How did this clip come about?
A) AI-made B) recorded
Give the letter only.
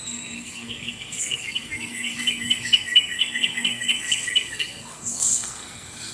A